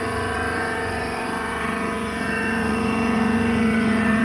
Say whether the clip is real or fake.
fake